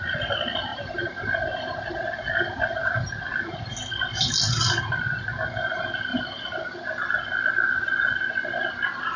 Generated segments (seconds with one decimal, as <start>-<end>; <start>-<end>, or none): 0.7-4.6; 6.1-7.0